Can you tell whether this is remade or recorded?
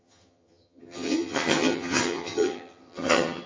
remade